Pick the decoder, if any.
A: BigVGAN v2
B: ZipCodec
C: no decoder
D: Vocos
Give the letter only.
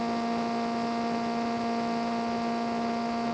C